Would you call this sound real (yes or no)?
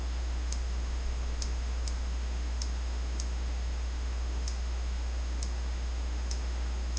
no